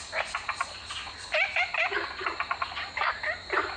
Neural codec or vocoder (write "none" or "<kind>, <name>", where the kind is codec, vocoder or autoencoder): none